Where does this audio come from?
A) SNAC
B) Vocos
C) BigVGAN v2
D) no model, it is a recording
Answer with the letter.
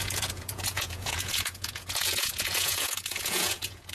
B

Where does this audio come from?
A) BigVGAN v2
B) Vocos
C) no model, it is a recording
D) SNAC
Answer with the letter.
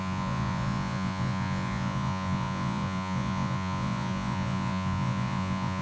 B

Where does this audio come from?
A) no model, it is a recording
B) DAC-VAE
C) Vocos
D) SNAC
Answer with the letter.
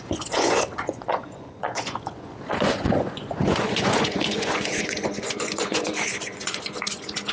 C